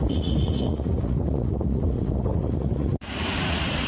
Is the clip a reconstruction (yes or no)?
yes